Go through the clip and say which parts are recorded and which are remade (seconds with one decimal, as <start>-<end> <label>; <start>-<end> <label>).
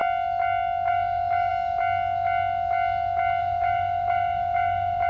0.0-0.9 recorded; 0.9-1.5 remade; 1.5-3.4 recorded; 3.4-5.1 remade